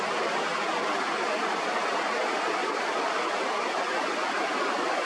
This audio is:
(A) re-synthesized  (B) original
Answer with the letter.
B